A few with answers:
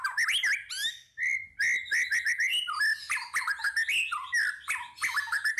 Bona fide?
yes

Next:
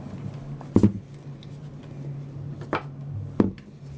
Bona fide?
yes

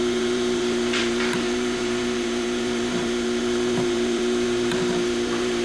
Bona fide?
no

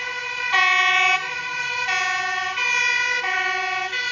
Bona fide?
yes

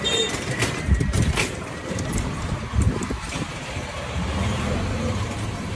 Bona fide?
no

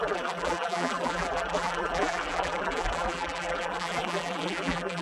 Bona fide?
no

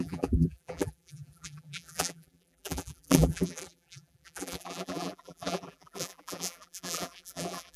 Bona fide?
no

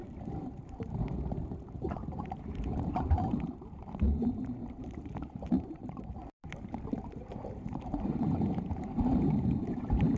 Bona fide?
no